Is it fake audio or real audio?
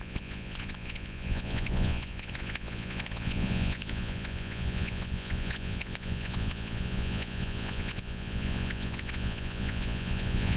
fake